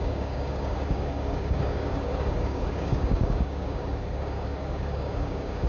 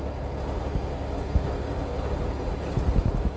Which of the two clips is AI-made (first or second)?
first